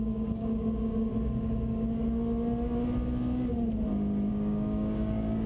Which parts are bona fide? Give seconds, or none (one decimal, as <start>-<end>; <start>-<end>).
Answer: 1.1-4.3